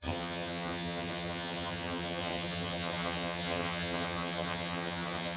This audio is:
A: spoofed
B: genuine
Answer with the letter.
A